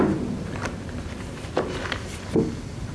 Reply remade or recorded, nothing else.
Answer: remade